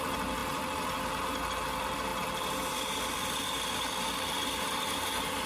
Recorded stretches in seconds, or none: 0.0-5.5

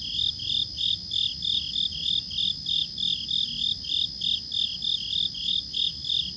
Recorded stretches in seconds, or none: 0.0-6.4

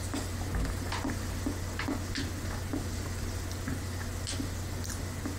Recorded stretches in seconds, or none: 0.0-5.4

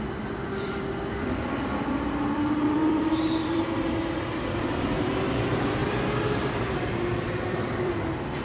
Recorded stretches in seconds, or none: 5.8-6.5

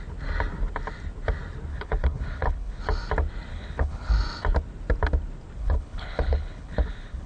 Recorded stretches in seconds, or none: 0.0-1.7; 2.8-3.5; 4.1-5.6

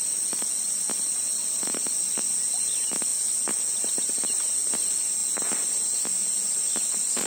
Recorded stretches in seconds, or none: 0.0-7.3

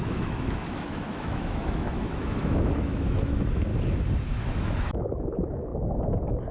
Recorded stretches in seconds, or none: 3.7-4.3; 5.7-6.5